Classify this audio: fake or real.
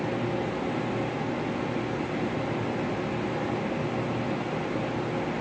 real